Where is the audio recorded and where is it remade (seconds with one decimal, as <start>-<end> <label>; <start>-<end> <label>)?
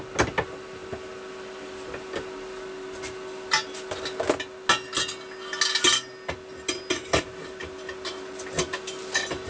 0.0-9.5 recorded